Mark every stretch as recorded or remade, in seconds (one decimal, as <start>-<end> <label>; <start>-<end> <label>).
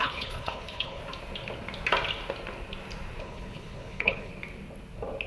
0.0-1.0 remade; 1.0-3.2 recorded; 3.2-4.3 remade; 4.3-5.3 recorded